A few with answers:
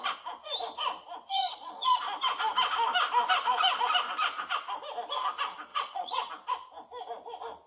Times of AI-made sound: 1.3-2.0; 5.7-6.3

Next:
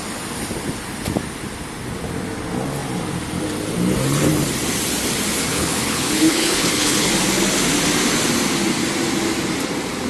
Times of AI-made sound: 5.5-7.1